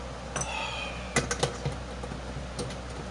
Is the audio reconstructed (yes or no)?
no